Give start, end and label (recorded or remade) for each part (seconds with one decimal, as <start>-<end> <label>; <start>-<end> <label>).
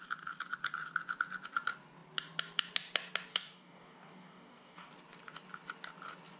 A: 0.0-3.3 recorded; 3.3-4.9 remade; 4.9-6.4 recorded